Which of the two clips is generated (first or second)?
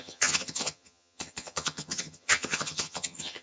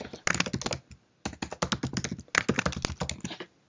first